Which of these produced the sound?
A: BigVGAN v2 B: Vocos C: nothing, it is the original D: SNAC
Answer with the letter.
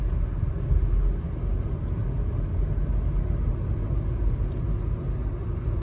C